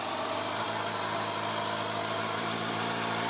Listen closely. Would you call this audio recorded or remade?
recorded